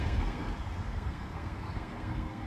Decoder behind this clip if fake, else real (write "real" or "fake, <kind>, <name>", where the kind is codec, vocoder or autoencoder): fake, codec, SNAC